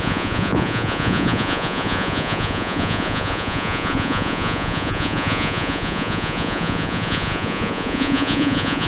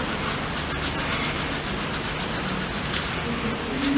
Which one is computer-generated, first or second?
first